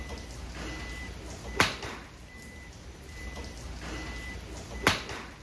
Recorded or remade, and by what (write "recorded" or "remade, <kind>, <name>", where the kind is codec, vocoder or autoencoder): recorded